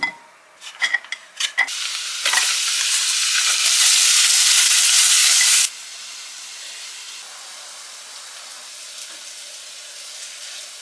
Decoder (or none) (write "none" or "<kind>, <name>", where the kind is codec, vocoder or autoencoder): none